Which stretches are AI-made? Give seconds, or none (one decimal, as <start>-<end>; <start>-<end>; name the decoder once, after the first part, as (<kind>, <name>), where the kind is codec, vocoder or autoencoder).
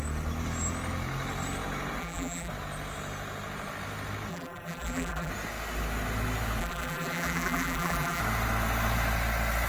2.0-2.5 (vocoder, BigVGAN v2); 4.3-5.3; 6.6-8.2